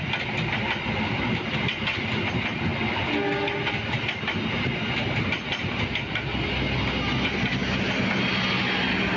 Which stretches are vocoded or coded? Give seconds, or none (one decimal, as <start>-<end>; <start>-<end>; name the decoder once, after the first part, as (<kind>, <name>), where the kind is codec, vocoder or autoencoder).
none